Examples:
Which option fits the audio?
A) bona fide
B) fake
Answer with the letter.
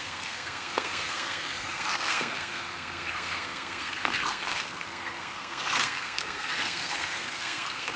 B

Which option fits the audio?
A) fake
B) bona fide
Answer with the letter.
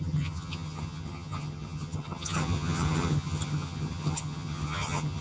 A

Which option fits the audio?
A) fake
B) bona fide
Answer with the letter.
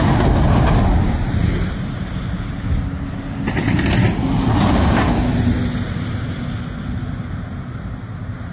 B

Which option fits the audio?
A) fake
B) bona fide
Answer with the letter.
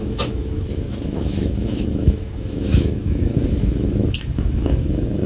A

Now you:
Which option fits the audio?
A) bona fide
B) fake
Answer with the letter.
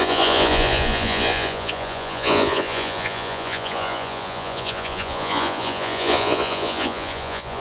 B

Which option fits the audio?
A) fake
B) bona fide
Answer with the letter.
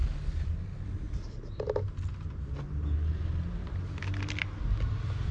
B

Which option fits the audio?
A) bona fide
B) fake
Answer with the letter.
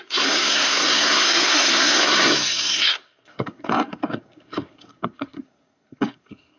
B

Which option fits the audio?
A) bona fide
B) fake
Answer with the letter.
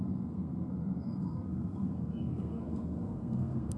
B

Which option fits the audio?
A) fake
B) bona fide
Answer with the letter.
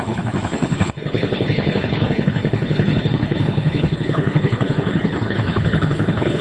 A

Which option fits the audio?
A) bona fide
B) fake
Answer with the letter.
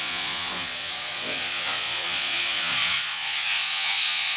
B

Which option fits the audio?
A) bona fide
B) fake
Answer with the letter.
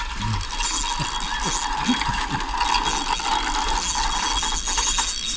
A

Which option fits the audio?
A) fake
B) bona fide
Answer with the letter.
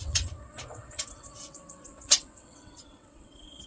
A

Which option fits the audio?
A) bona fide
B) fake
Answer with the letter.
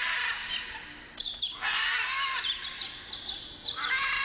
A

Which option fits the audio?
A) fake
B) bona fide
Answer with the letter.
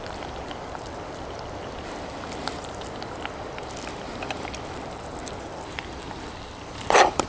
A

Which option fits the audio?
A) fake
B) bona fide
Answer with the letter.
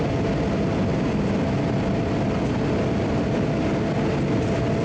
B